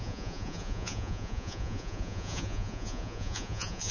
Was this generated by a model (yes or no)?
yes